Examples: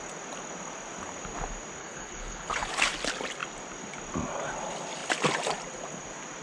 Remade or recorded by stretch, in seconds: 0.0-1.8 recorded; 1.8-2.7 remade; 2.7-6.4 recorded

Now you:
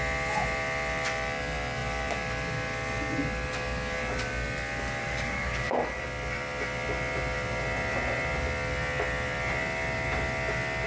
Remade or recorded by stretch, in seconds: 0.0-5.0 recorded; 5.0-6.0 remade; 6.0-10.9 recorded

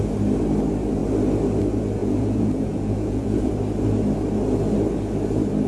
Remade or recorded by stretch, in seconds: 0.0-2.0 recorded; 2.0-3.5 remade; 3.5-5.7 recorded

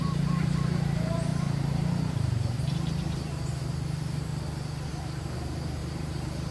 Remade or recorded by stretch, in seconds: 0.0-4.3 remade; 4.3-4.9 recorded; 4.9-6.5 remade

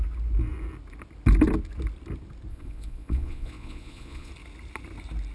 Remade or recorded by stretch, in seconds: 0.0-2.5 recorded; 2.5-4.3 remade; 4.3-5.3 recorded

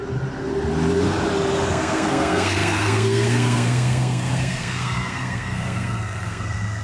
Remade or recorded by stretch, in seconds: 0.0-1.7 recorded; 1.7-6.8 remade

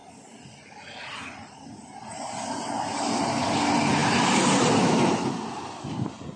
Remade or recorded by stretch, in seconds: 0.0-6.4 recorded